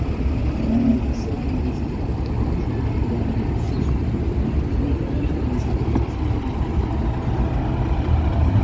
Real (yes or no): yes